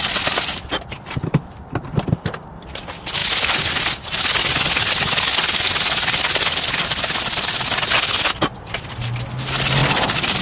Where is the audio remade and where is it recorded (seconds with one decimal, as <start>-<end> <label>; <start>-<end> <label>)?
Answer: 0.0-10.4 recorded